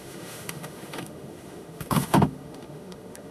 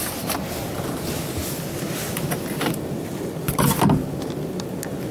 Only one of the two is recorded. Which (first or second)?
second